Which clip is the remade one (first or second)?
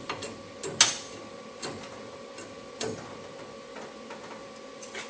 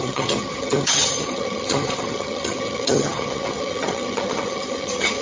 second